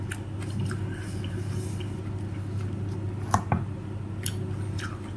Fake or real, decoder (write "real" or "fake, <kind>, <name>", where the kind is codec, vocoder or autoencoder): real